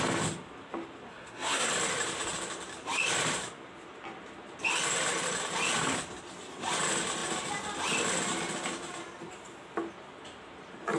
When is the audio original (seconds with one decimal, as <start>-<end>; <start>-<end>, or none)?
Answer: 0.0-1.1; 1.7-11.0